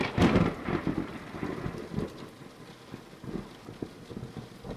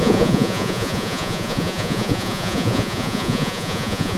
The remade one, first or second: second